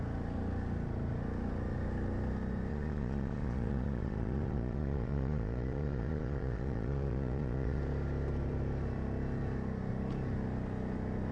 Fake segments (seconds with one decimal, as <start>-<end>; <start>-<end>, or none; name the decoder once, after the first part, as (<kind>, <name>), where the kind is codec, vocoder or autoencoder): 2.7-7.8 (vocoder, Vocos)